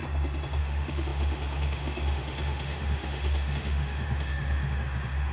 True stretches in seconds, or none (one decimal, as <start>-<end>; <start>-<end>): 0.0-0.6